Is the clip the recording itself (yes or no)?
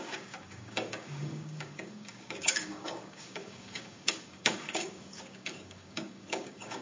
no